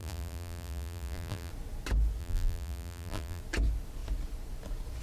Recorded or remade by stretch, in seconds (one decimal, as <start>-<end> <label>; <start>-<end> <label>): 0.0-1.5 remade; 1.5-2.2 recorded; 2.2-3.4 remade; 3.4-5.0 recorded